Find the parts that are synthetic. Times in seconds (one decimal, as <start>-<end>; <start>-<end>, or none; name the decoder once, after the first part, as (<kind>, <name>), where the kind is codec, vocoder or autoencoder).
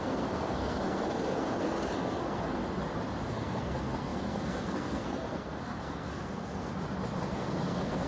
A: 0.0-2.6 (codec, SNAC); 3.3-6.7; 7.2-8.1